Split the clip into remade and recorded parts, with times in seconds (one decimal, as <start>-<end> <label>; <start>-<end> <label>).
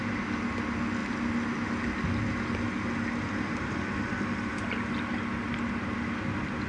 0.0-6.7 recorded